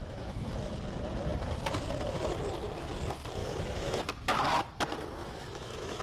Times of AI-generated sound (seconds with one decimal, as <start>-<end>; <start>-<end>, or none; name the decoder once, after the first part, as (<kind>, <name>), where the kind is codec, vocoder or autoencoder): 0.0-0.5 (autoencoder, DAC-VAE); 3.4-4.0; 5.2-6.0